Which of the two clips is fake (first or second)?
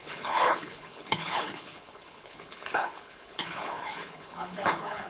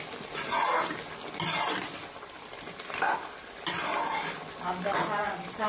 first